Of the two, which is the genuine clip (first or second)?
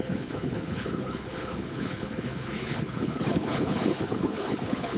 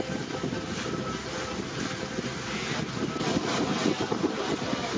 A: second